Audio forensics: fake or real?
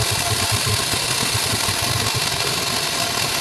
real